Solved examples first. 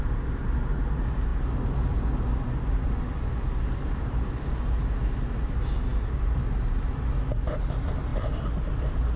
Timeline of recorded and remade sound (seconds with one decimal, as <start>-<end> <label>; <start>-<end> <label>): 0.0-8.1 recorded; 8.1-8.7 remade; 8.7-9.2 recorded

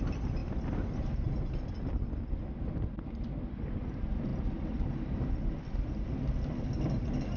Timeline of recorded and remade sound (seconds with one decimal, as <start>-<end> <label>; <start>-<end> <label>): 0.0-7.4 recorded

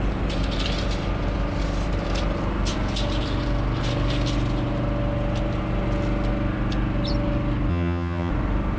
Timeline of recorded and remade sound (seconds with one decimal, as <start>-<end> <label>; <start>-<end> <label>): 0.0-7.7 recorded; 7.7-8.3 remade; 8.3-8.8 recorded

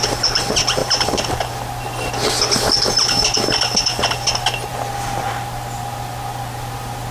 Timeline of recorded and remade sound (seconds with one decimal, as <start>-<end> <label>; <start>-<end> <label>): 0.0-0.8 recorded; 0.8-1.4 remade; 1.4-7.1 recorded

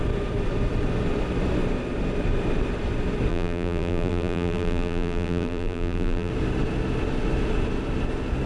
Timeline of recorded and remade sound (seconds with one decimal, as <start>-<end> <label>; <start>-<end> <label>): 0.0-3.3 recorded; 3.3-6.3 remade; 6.3-8.5 recorded

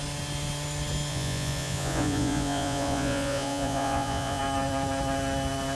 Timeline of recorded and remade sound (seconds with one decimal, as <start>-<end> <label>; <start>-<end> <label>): 0.0-1.1 recorded; 1.1-4.4 remade; 4.4-5.7 recorded

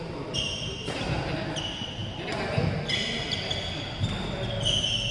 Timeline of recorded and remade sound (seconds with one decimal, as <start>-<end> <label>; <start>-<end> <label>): 0.0-5.1 recorded

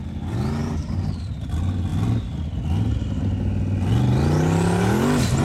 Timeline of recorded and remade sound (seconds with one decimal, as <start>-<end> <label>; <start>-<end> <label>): 0.0-0.6 recorded; 0.6-1.4 remade; 1.4-5.4 recorded